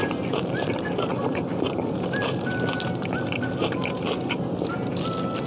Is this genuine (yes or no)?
yes